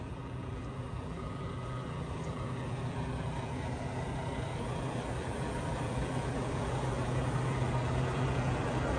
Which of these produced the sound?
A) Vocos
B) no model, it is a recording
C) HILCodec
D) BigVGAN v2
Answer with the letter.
D